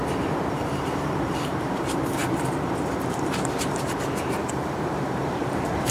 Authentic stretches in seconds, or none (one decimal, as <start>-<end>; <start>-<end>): none